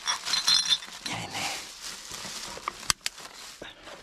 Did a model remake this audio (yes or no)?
no